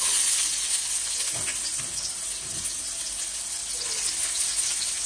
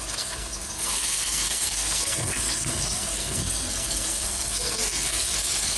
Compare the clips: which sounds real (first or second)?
first